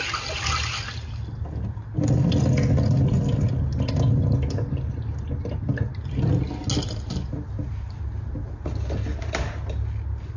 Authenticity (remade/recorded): recorded